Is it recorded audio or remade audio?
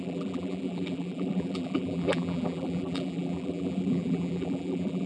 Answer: remade